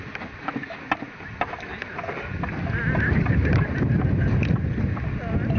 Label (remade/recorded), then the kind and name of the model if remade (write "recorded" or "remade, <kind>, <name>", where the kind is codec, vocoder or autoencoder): recorded